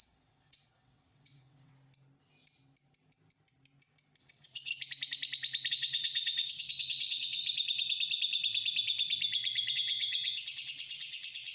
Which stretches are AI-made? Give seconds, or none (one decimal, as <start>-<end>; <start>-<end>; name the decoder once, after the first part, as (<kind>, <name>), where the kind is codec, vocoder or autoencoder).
0.0-1.7 (vocoder, WaveNeXt); 4.2-4.7; 5.7-7.4; 9.7-11.5

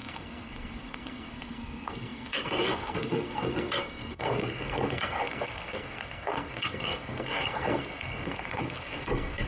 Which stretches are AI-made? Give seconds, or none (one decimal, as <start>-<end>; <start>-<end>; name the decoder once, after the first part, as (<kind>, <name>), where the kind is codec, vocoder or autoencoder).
0.0-9.5 (codec, SNAC)

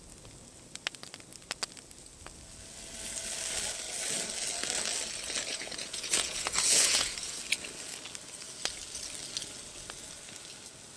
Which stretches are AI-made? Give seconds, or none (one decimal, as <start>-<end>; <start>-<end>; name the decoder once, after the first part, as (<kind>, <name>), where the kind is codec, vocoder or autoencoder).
5.5-7.4 (vocoder, Vocos)

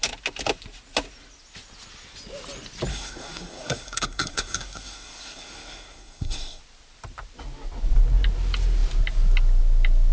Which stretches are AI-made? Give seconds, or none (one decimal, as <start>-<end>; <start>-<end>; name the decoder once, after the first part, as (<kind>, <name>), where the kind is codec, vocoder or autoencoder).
2.9-6.6 (codec, SNAC)

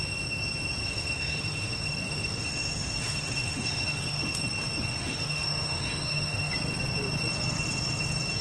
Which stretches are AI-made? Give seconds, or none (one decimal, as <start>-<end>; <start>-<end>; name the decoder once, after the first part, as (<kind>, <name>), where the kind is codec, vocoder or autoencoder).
0.8-4.4 (autoencoder, DAC-VAE); 4.9-6.5

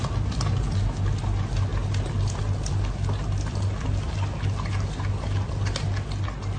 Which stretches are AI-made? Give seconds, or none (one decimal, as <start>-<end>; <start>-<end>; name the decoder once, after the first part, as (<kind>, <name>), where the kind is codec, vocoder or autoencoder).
none

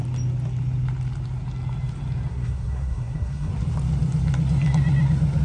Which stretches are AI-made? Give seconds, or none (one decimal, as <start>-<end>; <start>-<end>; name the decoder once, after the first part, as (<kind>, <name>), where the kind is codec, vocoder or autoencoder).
2.3-3.5 (codec, SNAC)